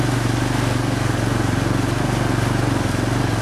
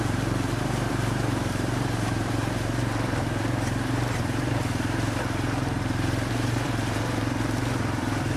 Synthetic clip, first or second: second